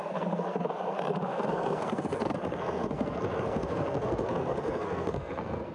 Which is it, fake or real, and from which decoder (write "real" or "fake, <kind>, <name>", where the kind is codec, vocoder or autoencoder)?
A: fake, codec, SNAC